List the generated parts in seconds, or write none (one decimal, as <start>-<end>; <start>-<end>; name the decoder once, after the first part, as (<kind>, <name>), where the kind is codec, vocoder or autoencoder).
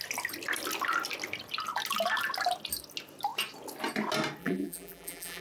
4.4-5.4 (vocoder, BigVGAN v2)